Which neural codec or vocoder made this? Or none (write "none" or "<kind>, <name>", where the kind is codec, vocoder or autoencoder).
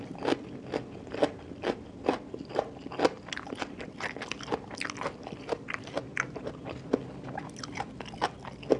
none